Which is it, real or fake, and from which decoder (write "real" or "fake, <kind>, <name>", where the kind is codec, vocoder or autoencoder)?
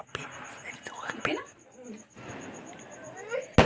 real